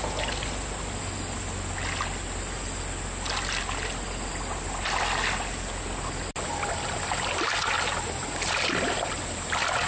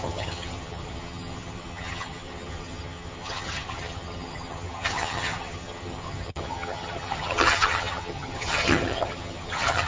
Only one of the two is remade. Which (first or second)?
second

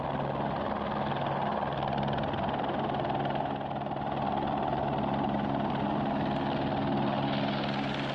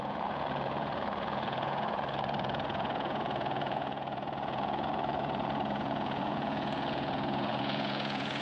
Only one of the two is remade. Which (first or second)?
second